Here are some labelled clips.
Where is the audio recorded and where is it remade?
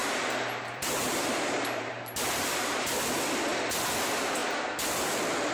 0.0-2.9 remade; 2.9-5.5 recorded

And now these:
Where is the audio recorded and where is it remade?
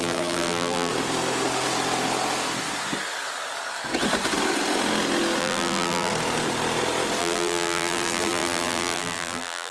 0.0-0.9 remade; 0.9-5.4 recorded; 5.4-6.1 remade; 6.1-7.2 recorded; 7.2-9.7 remade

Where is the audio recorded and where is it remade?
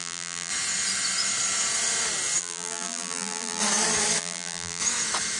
0.0-0.5 remade; 0.5-2.4 recorded; 2.4-3.6 remade; 3.6-4.2 recorded; 4.2-4.8 remade; 4.8-5.4 recorded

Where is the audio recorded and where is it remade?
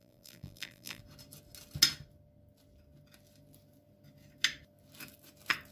0.0-1.0 remade; 1.0-5.7 recorded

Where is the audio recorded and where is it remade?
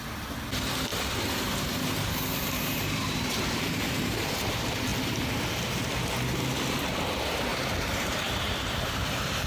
0.0-2.3 recorded; 2.3-4.3 remade; 4.3-7.5 recorded; 7.5-9.5 remade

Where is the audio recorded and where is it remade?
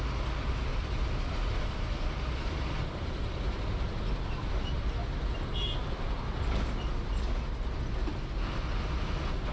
0.0-0.7 recorded; 0.7-4.5 remade; 4.5-5.8 recorded; 5.8-6.9 remade; 6.9-9.5 recorded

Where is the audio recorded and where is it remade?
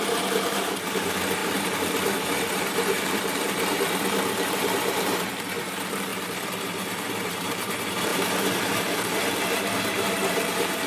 0.0-6.1 remade; 6.1-6.6 recorded; 6.6-10.9 remade